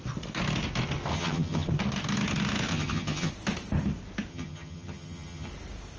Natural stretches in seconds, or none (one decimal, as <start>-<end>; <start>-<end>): 0.0-1.1; 1.7-2.7; 3.3-4.3; 5.5-6.0